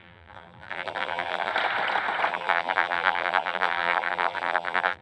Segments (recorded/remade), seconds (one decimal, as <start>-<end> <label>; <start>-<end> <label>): 0.0-1.5 remade; 1.5-2.3 recorded; 2.3-5.0 remade